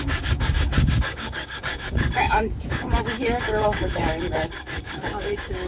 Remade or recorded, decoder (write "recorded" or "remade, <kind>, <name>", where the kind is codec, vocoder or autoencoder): remade, codec, DAC